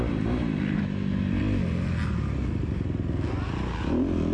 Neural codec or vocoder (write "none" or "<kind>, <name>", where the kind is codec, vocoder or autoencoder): none